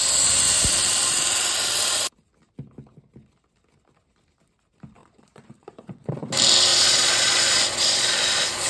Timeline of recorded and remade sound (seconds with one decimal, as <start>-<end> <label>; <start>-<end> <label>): 0.0-5.0 recorded; 5.0-6.3 remade; 6.3-6.7 recorded; 6.7-8.7 remade

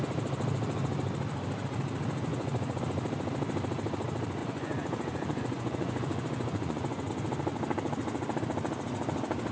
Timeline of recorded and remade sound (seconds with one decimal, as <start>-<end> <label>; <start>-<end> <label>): 0.0-2.3 recorded; 2.3-2.8 remade; 2.8-4.4 recorded; 4.4-7.1 remade; 7.1-9.5 recorded